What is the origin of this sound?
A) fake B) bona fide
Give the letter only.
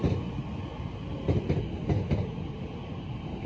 B